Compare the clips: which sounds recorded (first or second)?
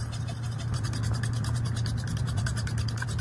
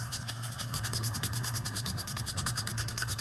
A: first